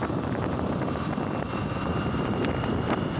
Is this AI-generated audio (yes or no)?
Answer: no